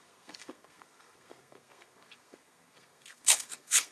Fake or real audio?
fake